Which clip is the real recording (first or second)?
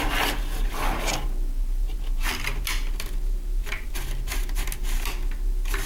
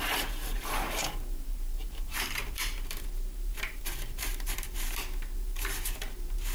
first